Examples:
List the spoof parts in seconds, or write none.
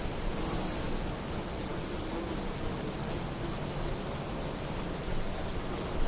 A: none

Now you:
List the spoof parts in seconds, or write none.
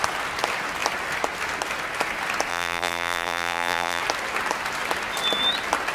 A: 2.5-4.0 (vocoder, BigVGAN v2)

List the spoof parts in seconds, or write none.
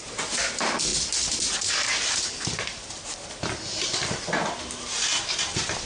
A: 0.0-0.9 (vocoder, BigVGAN v2); 1.7-2.7; 5.5-5.9